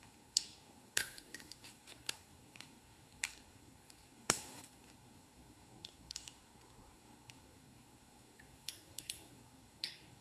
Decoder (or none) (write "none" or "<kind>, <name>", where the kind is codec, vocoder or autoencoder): codec, SNAC